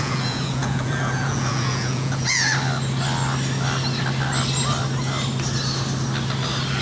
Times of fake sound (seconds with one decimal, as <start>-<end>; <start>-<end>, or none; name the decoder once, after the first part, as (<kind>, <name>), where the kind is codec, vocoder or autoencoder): 0.0-2.5 (vocoder, Vocos)